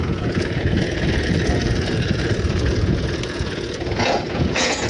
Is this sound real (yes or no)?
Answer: no